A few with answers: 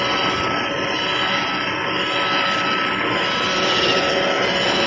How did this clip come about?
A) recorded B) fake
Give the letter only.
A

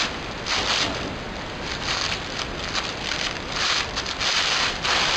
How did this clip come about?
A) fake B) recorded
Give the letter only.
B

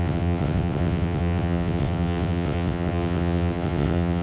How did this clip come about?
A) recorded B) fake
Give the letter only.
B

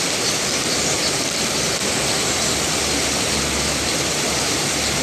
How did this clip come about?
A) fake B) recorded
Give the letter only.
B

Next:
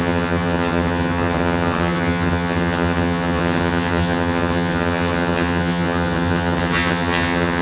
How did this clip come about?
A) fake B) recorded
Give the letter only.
A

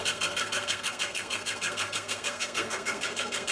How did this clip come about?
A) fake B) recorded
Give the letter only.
A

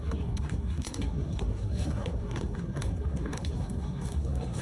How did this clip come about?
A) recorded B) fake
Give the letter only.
B